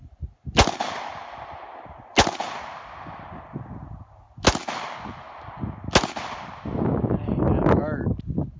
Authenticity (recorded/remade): recorded